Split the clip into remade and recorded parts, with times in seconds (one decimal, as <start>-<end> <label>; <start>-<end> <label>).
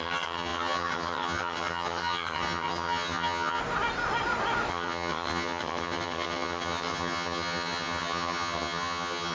0.0-3.6 remade; 3.6-4.7 recorded; 4.7-9.3 remade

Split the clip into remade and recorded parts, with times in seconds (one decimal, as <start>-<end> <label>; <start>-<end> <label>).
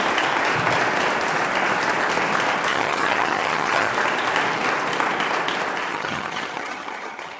0.0-2.7 recorded; 2.7-3.9 remade; 3.9-5.9 recorded; 5.9-7.4 remade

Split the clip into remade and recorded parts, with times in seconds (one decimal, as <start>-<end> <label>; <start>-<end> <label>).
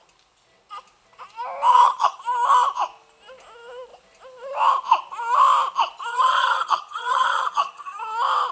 0.0-1.7 recorded; 1.7-2.2 remade; 2.2-6.1 recorded; 6.1-8.0 remade; 8.0-8.5 recorded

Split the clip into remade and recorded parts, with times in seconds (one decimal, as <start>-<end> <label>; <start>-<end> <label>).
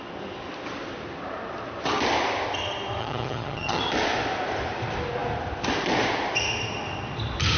0.0-3.0 recorded; 3.0-3.8 remade; 3.8-7.6 recorded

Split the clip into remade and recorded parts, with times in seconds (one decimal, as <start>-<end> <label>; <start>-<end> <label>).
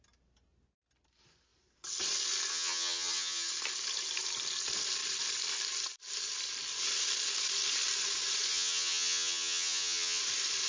0.0-2.5 recorded; 2.5-3.5 remade; 3.5-8.5 recorded; 8.5-10.2 remade; 10.2-10.7 recorded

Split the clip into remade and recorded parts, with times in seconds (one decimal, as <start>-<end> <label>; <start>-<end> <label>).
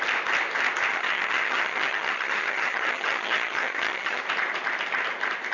0.0-0.9 recorded; 0.9-4.2 remade; 4.2-5.5 recorded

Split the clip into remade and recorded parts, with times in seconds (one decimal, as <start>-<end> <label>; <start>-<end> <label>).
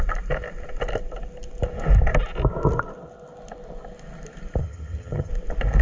0.0-4.6 recorded; 4.6-5.3 remade; 5.3-5.8 recorded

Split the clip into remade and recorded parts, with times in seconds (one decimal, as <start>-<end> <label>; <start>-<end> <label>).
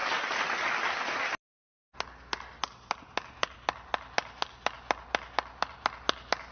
0.0-6.5 recorded